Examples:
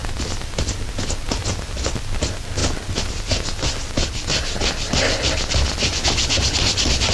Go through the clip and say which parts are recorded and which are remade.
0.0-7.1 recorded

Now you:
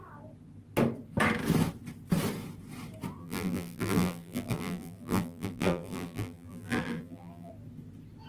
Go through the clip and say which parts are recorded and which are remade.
0.0-3.2 recorded; 3.2-7.5 remade; 7.5-8.3 recorded

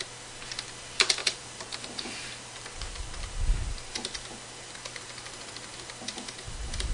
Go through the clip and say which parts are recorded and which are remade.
0.0-1.2 recorded; 1.2-3.7 remade; 3.7-6.9 recorded

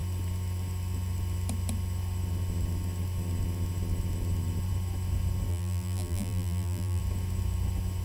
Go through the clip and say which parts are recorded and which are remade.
0.0-5.5 recorded; 5.5-7.0 remade; 7.0-8.0 recorded

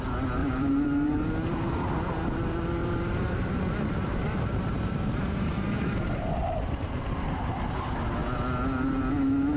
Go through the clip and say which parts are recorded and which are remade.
0.0-0.4 recorded; 0.4-1.2 remade; 1.2-2.8 recorded; 2.8-3.5 remade; 3.5-4.1 recorded; 4.1-7.4 remade; 7.4-9.6 recorded